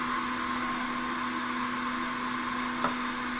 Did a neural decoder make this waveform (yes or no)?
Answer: no